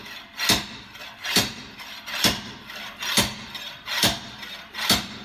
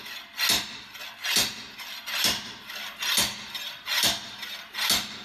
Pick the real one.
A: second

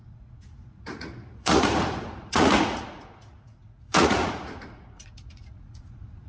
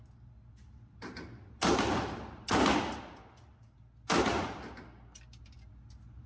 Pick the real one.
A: second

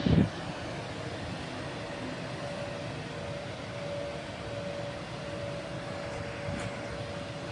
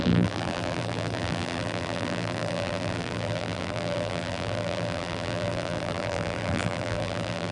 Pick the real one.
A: first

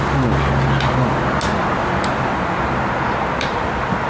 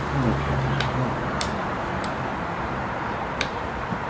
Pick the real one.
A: first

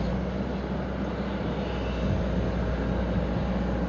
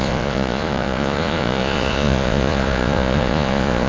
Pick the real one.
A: first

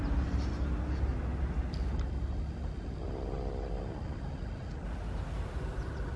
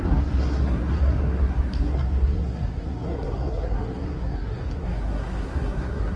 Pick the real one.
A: first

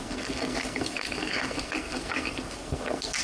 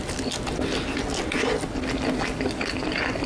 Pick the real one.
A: second